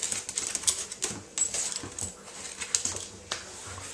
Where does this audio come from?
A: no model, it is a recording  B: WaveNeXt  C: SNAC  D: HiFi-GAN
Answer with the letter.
A